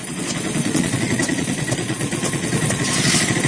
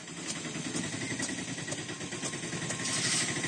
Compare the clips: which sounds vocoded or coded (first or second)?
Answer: first